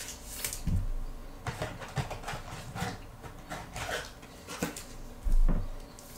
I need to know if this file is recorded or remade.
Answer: recorded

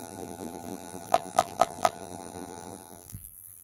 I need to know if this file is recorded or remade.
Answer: remade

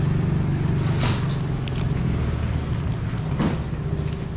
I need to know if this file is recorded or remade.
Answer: recorded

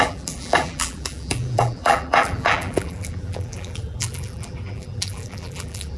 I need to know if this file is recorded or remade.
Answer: remade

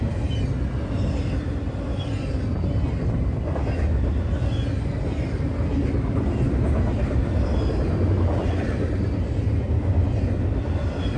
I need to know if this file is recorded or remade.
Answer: recorded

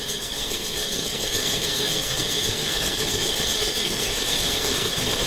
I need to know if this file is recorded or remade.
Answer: remade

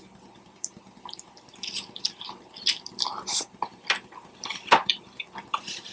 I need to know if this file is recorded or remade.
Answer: remade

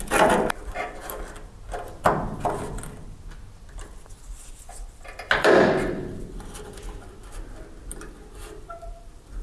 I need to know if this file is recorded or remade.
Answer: recorded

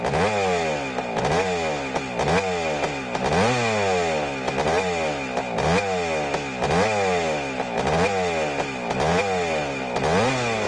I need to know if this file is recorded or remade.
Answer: recorded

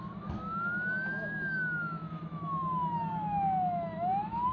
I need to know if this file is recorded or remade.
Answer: remade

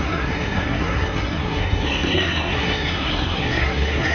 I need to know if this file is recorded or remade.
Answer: remade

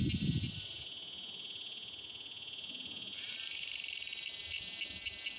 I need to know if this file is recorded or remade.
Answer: recorded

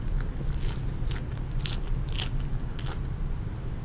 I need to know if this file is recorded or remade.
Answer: recorded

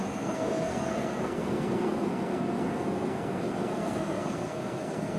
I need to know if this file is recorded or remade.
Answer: remade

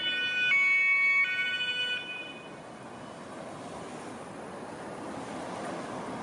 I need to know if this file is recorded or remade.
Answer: recorded